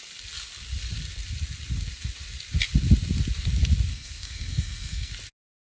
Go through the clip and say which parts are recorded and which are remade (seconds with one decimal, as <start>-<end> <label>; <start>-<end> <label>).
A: 0.0-3.9 recorded; 3.9-5.1 remade; 5.1-5.7 recorded